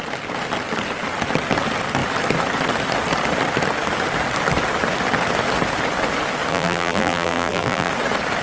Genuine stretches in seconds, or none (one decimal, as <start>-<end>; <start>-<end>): 0.0-6.5; 7.9-8.4

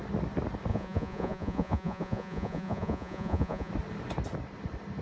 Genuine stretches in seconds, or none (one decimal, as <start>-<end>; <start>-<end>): 0.0-0.7; 3.7-5.0

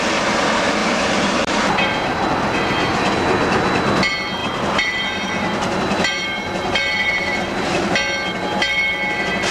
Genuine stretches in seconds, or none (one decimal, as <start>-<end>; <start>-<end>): 0.0-0.8; 2.3-4.4; 7.4-9.5

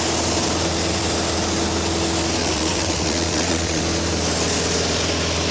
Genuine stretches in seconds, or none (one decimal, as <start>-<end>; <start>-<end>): 0.0-2.4; 3.8-5.5